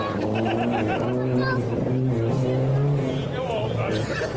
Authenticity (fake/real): real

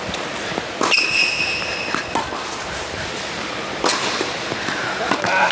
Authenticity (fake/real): real